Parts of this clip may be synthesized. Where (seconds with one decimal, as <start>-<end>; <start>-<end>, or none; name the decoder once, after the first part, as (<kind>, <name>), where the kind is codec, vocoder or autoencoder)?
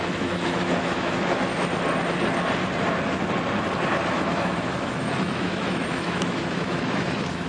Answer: 0.0-1.5 (autoencoder, DAC-VAE); 4.1-7.5